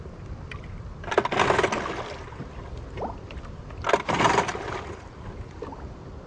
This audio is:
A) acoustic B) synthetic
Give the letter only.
A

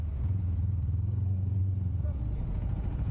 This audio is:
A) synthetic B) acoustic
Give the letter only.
A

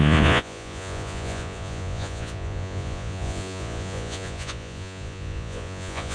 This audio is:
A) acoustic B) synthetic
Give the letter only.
B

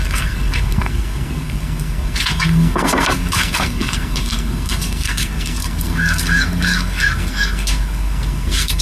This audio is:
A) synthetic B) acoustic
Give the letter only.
A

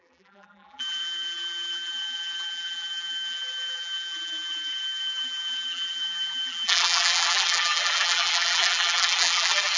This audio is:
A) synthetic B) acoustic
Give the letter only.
A